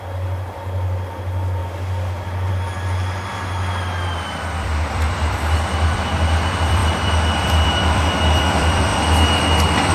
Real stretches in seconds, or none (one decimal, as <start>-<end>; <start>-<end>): none